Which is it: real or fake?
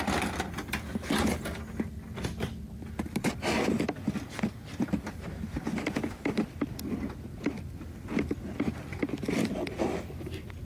real